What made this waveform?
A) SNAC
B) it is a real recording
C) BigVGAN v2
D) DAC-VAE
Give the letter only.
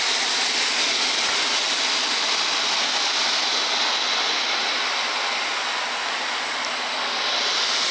B